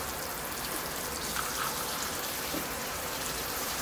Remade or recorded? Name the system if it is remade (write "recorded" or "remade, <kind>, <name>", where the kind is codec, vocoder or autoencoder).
remade, vocoder, BigVGAN v2